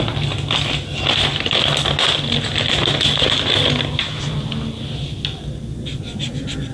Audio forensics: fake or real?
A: real